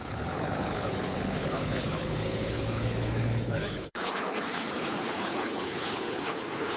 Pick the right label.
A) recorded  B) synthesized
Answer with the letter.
B